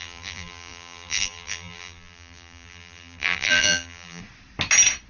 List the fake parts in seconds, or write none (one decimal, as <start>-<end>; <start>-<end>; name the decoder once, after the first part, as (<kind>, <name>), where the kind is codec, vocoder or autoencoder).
0.0-4.2 (vocoder, BigVGAN v2)